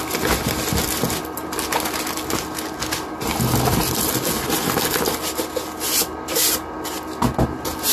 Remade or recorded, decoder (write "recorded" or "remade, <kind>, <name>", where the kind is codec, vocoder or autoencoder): recorded